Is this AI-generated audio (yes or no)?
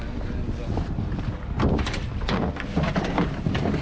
no